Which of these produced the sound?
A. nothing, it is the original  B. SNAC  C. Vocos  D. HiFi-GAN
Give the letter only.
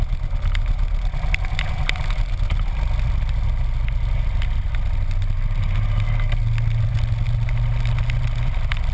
A